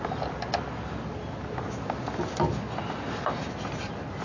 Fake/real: real